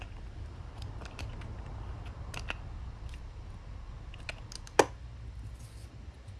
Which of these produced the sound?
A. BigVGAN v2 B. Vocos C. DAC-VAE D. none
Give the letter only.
D